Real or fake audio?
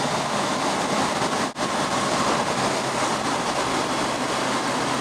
real